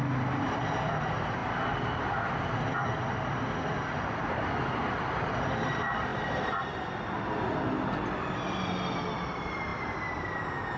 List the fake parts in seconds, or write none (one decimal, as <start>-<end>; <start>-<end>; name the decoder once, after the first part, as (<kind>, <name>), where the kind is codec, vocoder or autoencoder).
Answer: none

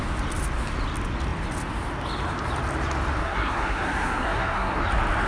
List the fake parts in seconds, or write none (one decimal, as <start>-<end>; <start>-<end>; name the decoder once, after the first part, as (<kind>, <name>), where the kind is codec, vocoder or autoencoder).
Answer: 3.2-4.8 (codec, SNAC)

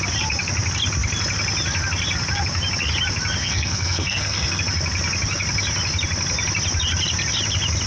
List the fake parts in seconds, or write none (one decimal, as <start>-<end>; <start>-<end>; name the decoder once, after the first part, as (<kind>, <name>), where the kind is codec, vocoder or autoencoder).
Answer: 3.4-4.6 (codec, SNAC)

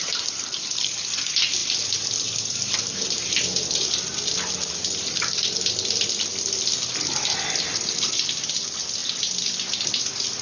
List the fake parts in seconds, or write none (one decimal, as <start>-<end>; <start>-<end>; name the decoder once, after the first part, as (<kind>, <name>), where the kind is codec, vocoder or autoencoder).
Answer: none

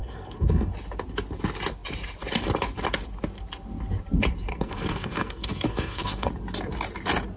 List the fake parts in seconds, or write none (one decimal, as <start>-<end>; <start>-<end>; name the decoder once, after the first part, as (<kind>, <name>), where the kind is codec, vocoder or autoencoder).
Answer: 0.0-0.7 (codec, SNAC); 4.5-6.3